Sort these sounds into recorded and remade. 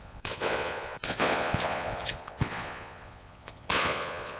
remade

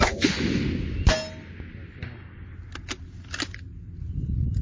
recorded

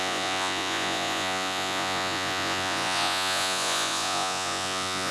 remade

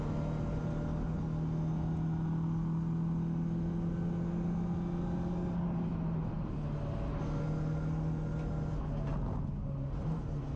recorded